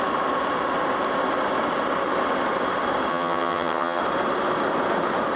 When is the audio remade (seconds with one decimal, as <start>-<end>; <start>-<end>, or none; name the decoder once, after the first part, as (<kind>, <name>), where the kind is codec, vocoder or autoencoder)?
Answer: 3.1-4.0 (vocoder, HiFi-GAN)